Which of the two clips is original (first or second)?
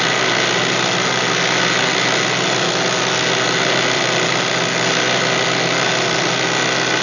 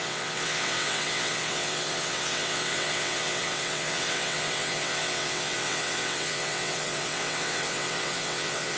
first